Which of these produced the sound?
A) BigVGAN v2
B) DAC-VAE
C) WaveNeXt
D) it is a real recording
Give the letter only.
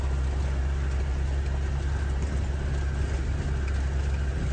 D